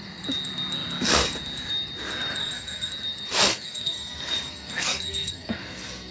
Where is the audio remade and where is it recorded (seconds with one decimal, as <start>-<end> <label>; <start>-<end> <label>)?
0.0-2.4 recorded; 2.4-2.9 remade; 2.9-3.5 recorded; 3.5-6.1 remade